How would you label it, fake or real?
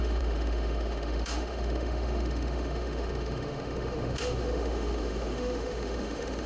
fake